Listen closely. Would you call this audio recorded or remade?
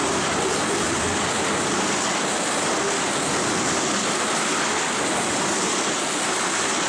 recorded